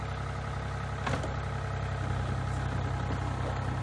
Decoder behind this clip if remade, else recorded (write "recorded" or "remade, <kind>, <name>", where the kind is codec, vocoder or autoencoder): recorded